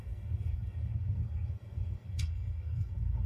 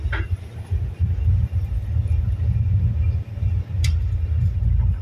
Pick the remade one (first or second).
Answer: first